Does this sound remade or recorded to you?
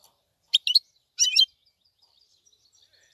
recorded